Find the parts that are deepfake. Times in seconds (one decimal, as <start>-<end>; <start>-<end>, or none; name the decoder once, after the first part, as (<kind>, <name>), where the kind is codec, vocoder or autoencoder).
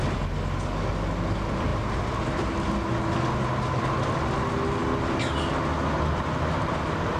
none